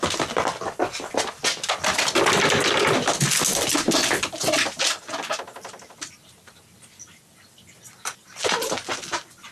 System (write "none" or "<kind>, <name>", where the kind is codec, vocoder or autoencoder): none